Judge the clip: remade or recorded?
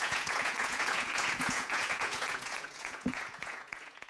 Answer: remade